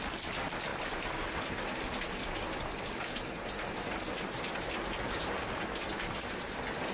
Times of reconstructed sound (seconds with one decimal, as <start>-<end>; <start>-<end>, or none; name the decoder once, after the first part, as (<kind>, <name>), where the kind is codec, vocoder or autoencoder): none